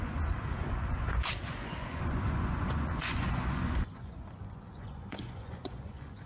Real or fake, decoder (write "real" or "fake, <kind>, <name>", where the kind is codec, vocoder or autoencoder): fake, vocoder, Vocos